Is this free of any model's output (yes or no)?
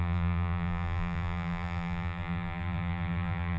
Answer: no